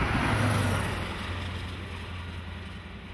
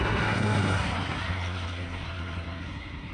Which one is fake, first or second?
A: second